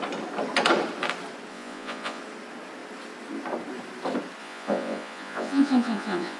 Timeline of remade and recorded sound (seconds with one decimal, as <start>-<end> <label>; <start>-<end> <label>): 0.0-1.5 recorded; 1.5-2.2 remade; 2.2-4.4 recorded; 4.4-6.4 remade